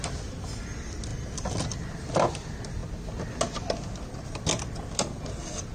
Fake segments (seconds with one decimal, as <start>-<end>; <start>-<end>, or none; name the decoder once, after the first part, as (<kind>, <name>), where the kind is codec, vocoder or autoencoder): none